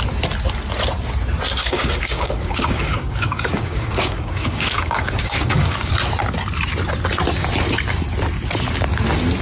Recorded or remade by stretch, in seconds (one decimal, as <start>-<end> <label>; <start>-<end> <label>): 0.0-1.6 recorded; 1.6-5.9 remade; 5.9-9.4 recorded